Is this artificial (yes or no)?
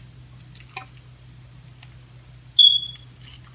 no